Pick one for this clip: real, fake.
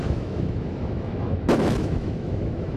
fake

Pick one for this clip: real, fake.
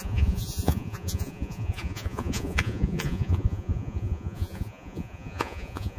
fake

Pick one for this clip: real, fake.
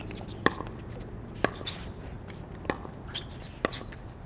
real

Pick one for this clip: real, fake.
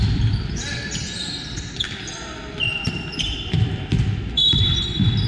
real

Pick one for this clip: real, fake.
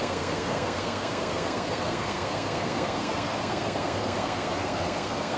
fake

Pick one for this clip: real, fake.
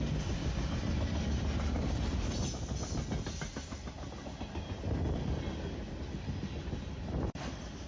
real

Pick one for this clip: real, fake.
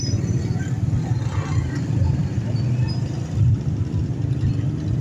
real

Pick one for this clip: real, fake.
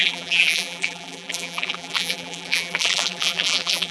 fake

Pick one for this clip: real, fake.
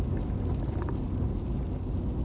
real